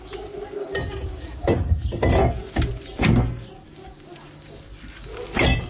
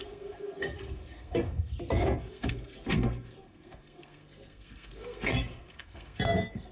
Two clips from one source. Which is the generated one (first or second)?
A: second